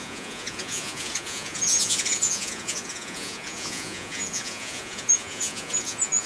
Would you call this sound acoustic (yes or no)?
no